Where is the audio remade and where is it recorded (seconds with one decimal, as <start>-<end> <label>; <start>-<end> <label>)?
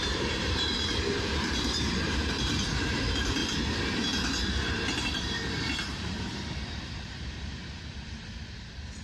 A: 0.0-3.4 remade; 3.4-5.0 recorded; 5.0-9.0 remade